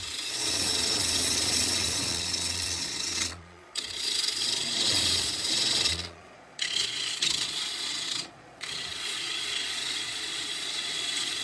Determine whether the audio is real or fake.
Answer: fake